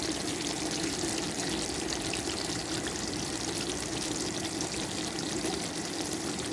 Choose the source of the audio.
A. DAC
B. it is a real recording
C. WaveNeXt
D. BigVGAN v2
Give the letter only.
D